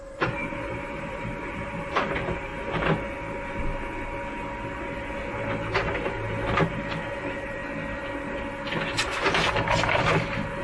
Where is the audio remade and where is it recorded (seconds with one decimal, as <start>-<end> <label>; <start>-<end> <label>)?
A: 0.0-2.5 remade; 2.5-6.6 recorded; 6.6-7.6 remade; 7.6-10.6 recorded